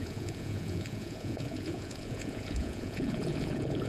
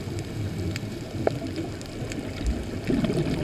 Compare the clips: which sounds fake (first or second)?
first